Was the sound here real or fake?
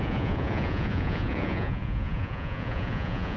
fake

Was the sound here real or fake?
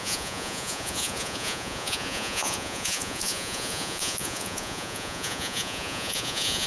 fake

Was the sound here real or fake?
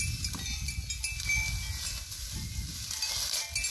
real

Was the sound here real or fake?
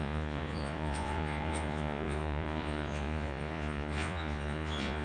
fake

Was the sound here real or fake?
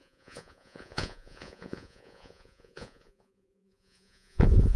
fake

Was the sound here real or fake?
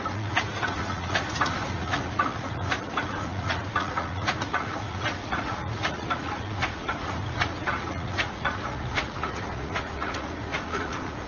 fake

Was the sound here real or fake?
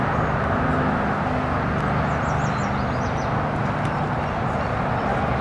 real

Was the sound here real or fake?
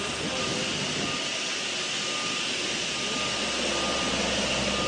real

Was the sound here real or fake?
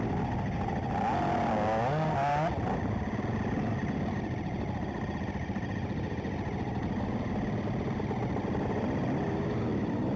real